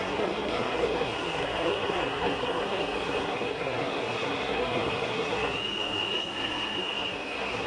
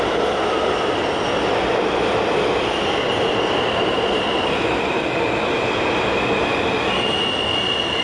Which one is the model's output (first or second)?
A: first